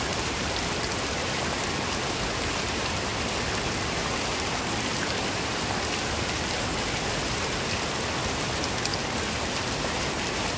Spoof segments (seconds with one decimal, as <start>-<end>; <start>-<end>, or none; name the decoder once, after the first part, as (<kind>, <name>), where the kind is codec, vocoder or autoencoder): none